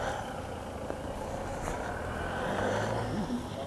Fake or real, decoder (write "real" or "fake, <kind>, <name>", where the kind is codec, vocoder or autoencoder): fake, vocoder, BigVGAN v2